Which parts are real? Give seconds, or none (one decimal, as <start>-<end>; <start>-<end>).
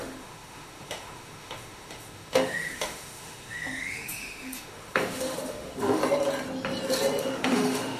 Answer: 6.0-7.2